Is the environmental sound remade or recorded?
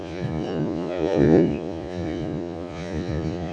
remade